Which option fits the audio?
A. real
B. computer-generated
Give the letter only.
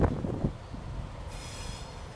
A